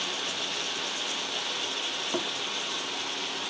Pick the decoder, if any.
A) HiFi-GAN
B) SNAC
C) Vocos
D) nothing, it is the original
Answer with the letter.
D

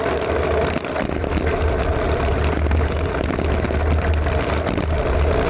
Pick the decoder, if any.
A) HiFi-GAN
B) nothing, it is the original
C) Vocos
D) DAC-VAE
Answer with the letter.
B